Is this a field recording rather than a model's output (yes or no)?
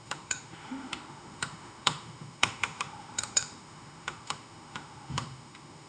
no